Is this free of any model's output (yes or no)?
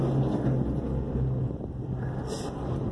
yes